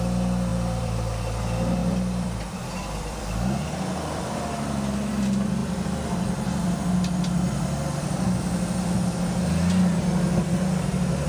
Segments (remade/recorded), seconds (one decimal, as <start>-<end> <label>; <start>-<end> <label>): 0.0-0.5 recorded; 0.5-1.2 remade; 1.2-1.8 recorded; 1.8-3.7 remade; 3.7-11.3 recorded